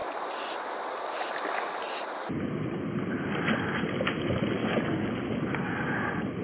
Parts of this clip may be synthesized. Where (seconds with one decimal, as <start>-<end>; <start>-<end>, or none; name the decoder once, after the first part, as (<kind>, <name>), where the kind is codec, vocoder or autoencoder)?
4.6-5.5 (codec, DAC)